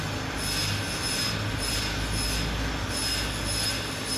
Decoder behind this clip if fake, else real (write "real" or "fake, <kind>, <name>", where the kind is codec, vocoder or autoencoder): real